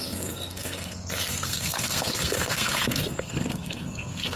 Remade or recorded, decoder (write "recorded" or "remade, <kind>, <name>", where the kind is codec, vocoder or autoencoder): remade, codec, SNAC